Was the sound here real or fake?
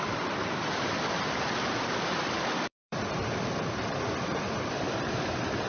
fake